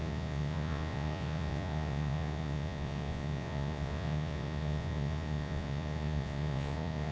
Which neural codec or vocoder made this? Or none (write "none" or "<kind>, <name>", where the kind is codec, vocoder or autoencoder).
vocoder, Vocos